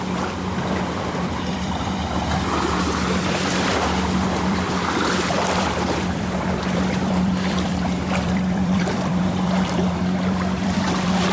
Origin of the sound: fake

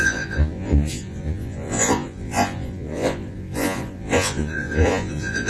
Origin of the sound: fake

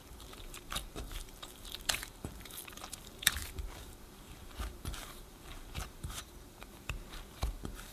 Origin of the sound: fake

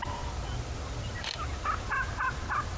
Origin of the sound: real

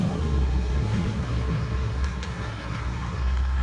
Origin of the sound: fake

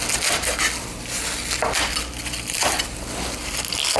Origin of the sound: real